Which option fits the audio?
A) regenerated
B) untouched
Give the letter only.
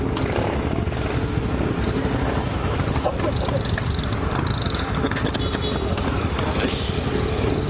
B